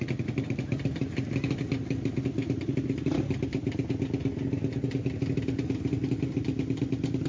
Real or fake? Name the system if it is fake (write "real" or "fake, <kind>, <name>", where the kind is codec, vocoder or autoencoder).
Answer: real